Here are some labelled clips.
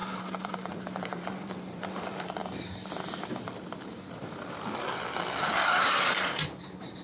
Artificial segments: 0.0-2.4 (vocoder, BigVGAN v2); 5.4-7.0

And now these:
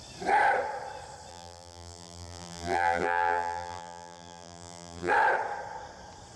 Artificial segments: 1.3-5.1 (vocoder, BigVGAN v2)

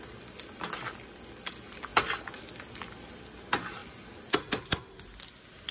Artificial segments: none

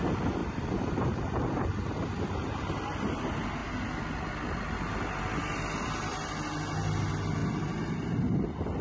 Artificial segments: 0.4-2.6 (vocoder, BigVGAN v2)